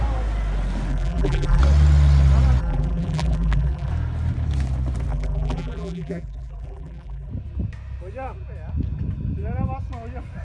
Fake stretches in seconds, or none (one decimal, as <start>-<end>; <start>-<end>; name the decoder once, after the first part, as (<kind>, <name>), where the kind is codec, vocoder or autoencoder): 0.9-1.6 (vocoder, BigVGAN v2); 2.6-3.9; 5.1-7.3